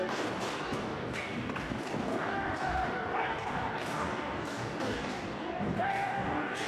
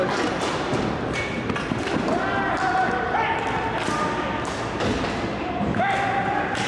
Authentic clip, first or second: second